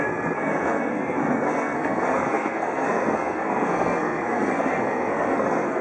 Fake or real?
fake